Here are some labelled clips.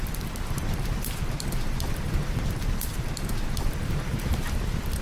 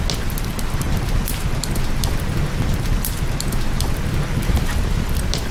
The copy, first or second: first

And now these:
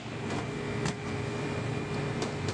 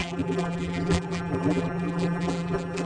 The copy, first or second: second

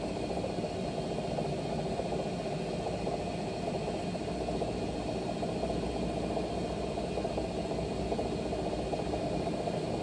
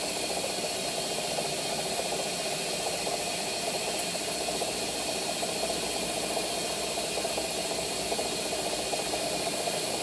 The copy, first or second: second